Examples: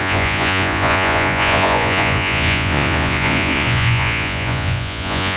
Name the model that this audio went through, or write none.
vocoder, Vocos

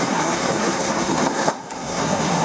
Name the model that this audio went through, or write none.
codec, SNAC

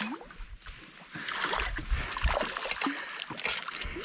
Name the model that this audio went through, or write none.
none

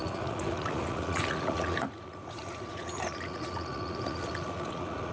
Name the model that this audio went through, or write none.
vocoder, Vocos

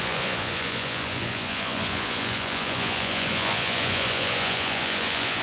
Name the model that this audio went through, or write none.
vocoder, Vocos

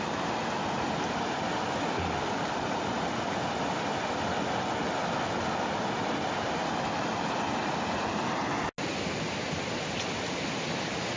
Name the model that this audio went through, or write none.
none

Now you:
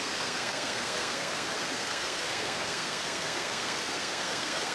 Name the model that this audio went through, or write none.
codec, SNAC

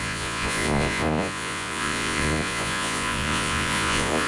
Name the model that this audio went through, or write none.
vocoder, Vocos